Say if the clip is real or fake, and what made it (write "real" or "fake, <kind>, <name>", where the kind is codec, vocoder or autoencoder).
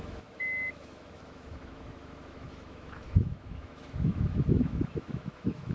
fake, autoencoder, DAC-VAE